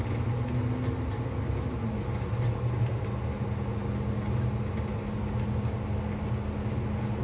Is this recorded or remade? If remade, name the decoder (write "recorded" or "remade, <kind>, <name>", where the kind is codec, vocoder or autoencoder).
recorded